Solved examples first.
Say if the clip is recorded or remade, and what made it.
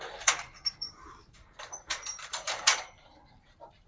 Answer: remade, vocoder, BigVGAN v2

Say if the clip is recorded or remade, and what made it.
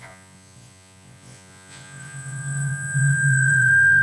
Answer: remade, vocoder, Vocos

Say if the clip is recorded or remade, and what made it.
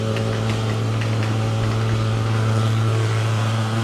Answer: recorded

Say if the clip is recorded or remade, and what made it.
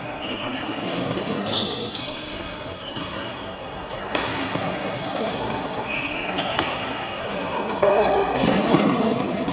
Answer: remade, codec, SNAC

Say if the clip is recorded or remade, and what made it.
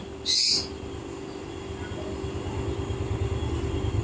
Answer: recorded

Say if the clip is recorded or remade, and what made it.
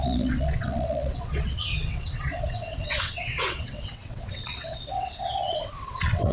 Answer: remade, vocoder, WaveNeXt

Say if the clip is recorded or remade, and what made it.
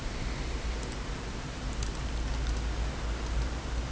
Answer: recorded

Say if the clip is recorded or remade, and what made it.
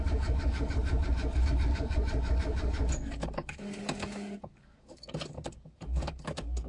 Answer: remade, codec, DAC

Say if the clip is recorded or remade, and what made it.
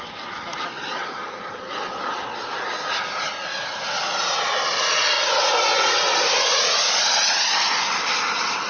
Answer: recorded